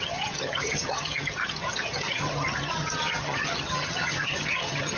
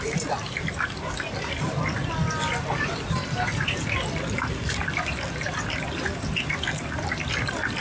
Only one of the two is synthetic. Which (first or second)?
first